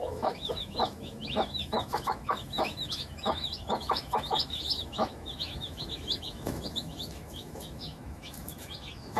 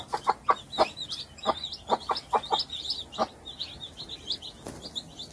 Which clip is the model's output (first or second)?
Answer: first